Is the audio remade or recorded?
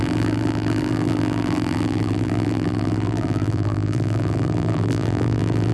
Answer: remade